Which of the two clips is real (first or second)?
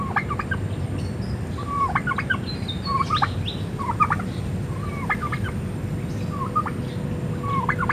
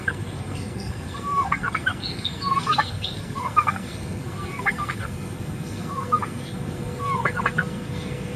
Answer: first